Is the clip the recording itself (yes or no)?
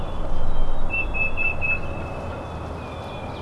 yes